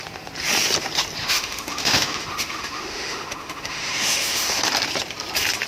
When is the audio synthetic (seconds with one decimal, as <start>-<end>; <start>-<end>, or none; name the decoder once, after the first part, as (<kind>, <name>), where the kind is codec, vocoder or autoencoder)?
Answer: 1.2-4.6 (autoencoder, DAC-VAE)